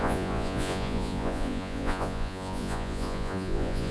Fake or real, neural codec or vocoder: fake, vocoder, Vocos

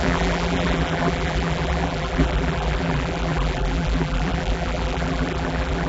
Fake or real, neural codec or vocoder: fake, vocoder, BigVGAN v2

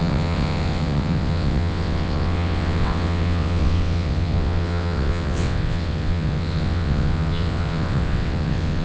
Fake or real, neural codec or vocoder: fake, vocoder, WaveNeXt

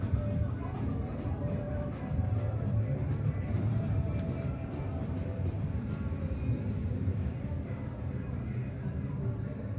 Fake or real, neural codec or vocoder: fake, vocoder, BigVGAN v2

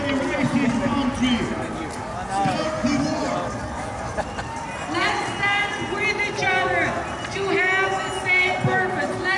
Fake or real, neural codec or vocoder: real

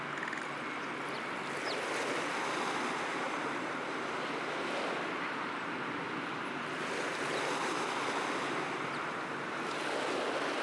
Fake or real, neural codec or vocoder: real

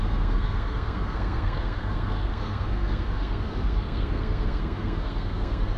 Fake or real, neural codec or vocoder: fake, codec, SNAC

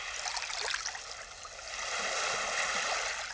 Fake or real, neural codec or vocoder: real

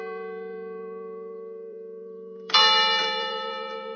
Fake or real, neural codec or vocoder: fake, vocoder, BigVGAN v2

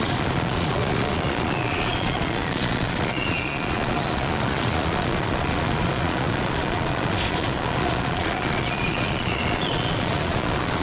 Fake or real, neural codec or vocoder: fake, vocoder, Vocos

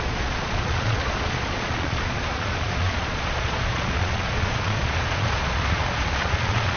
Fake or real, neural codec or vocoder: fake, vocoder, Vocos